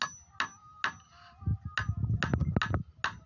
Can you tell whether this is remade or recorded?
recorded